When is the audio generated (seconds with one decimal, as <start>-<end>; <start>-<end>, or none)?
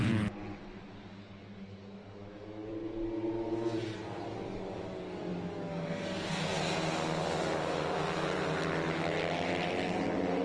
1.1-2.7; 4.3-6.3